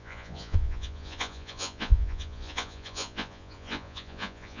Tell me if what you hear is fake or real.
fake